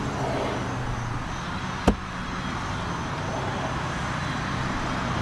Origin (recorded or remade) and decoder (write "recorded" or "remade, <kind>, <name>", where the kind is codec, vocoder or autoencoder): recorded